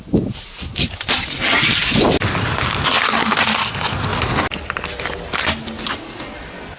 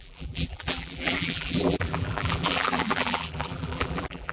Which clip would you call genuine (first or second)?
first